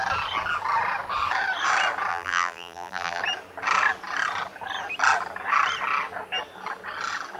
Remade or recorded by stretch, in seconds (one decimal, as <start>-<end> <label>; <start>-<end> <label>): 0.0-2.1 recorded; 2.1-3.2 remade; 3.2-7.4 recorded